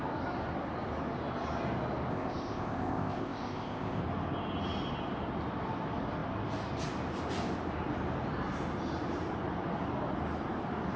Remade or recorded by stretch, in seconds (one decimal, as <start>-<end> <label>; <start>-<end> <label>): 0.0-2.1 recorded; 2.1-4.0 remade; 4.0-11.0 recorded